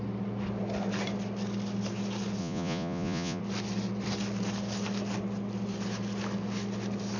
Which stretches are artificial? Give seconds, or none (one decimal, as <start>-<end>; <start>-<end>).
2.4-3.4